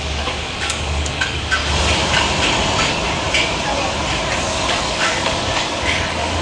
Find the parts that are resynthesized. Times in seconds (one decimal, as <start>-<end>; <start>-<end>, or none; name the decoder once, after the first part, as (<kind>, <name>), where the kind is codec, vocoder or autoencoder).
0.0-1.6 (codec, DAC); 4.4-6.4